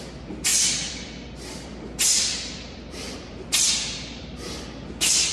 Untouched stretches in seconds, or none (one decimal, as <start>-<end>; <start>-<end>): none